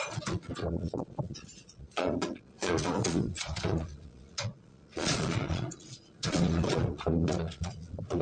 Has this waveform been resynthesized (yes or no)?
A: yes